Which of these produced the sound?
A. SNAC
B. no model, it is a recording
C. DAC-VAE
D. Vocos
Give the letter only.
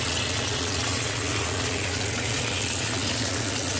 D